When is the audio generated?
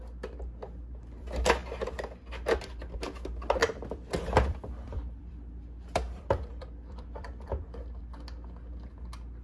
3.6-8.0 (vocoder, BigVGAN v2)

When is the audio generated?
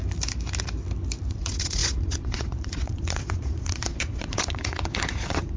1.3-5.6 (vocoder, Vocos)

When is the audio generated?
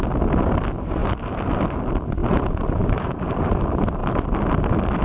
2.2-3.6 (vocoder, BigVGAN v2)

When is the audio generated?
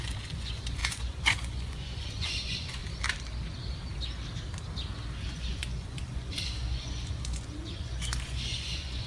0.0-2.8 (vocoder, Vocos); 5.3-9.1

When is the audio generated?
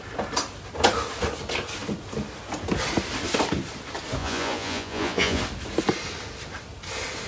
4.2-5.4 (vocoder, Vocos)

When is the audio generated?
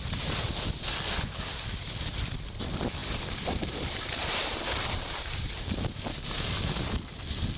3.0-6.3 (vocoder, BigVGAN v2)